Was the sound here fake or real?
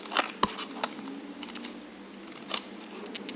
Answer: real